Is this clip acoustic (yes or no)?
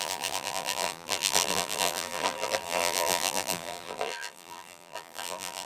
no